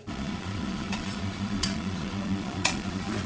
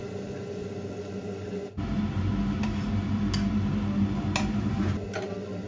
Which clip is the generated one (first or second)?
first